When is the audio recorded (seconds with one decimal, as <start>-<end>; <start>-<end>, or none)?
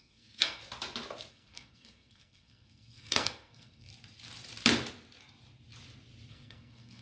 0.6-1.3; 3.9-6.3